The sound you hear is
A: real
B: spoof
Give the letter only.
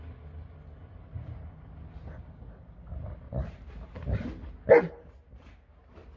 A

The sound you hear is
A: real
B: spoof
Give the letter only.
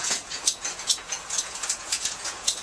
B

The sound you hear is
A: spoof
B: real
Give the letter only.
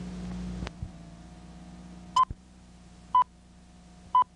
B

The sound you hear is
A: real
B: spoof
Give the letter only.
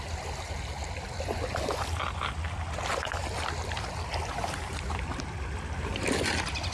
A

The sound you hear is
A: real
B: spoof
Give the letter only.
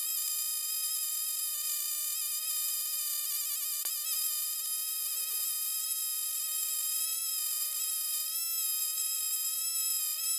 B